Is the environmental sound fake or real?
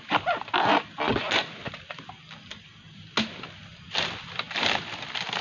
real